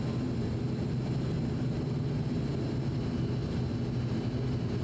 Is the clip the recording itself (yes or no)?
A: yes